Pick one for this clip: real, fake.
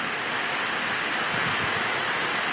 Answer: real